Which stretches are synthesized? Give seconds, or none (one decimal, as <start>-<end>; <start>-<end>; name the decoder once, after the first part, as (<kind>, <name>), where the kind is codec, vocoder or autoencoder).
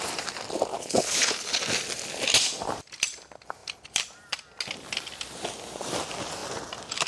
0.7-1.6 (codec, HILCodec)